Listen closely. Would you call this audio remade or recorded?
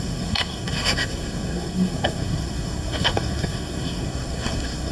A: remade